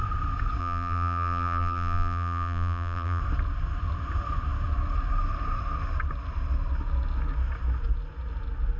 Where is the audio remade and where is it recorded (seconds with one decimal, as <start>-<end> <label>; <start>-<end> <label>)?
0.0-0.6 recorded; 0.6-3.2 remade; 3.2-8.8 recorded